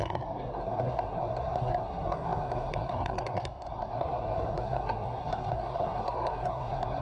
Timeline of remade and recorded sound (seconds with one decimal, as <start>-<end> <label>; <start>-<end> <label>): 0.0-7.0 remade